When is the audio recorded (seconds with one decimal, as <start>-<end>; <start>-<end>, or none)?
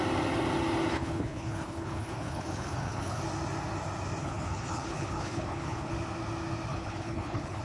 0.0-0.9; 3.2-4.2; 5.9-6.7